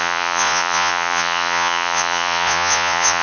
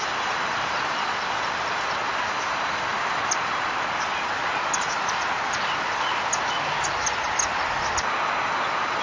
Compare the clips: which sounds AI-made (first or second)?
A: first